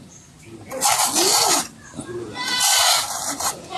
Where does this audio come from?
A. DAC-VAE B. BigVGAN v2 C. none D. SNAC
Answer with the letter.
C